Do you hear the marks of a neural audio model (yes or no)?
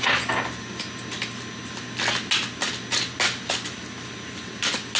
no